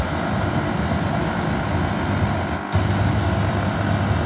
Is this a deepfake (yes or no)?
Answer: no